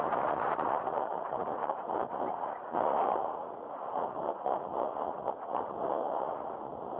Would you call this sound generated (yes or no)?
yes